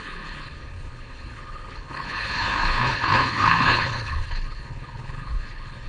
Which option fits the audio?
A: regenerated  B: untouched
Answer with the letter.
A